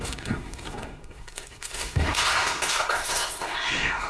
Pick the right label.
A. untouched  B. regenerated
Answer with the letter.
B